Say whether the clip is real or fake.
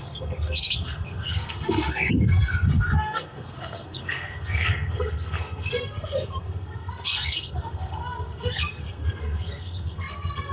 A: fake